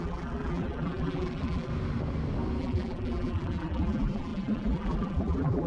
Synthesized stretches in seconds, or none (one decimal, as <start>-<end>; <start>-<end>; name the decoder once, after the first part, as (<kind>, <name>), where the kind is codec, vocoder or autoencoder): 0.0-1.7 (vocoder, BigVGAN v2); 2.6-5.7